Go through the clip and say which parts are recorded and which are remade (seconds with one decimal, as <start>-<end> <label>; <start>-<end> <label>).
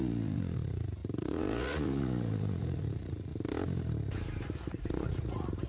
0.0-3.3 remade; 3.3-4.8 recorded; 4.8-5.7 remade